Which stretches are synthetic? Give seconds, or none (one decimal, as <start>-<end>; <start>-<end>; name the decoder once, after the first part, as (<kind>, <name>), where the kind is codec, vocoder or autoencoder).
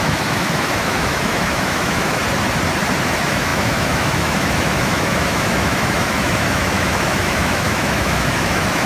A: 0.0-2.2 (autoencoder, DAC-VAE); 3.0-8.9